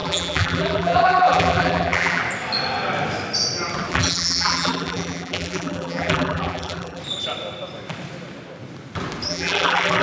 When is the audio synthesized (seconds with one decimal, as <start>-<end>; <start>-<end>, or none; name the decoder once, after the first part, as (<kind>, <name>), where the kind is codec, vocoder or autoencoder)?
0.0-2.2 (vocoder, BigVGAN v2); 3.9-7.0; 9.3-10.0